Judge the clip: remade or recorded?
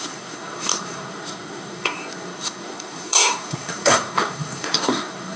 remade